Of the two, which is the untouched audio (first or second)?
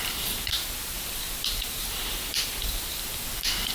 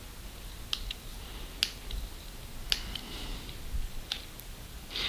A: second